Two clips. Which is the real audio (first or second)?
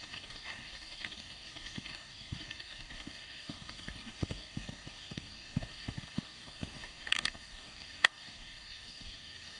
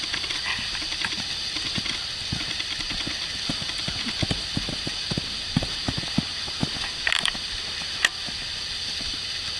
second